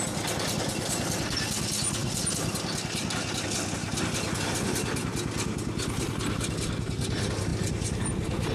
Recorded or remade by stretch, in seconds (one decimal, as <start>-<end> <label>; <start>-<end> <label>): 0.0-7.5 recorded; 7.5-8.0 remade; 8.0-8.5 recorded